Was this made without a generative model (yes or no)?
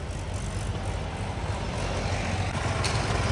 yes